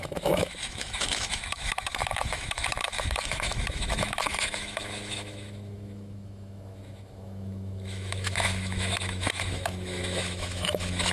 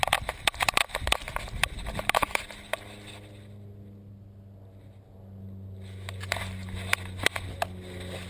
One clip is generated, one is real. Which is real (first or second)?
second